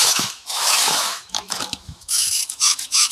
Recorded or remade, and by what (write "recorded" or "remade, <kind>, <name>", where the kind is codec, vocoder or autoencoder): remade, autoencoder, DAC-VAE